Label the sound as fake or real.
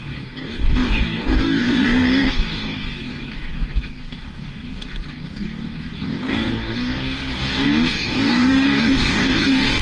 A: fake